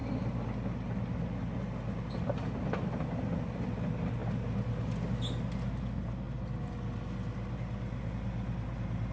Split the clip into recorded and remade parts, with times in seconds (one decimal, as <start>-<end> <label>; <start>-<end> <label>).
0.0-9.1 recorded